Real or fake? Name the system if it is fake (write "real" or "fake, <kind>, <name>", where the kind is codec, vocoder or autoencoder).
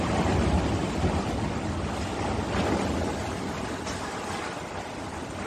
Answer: real